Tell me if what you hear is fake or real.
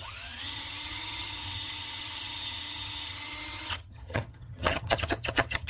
fake